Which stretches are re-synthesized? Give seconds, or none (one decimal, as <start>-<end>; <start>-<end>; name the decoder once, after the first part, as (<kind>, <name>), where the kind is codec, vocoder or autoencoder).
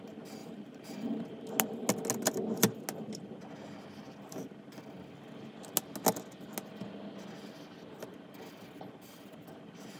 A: 0.4-1.2 (vocoder, BigVGAN v2)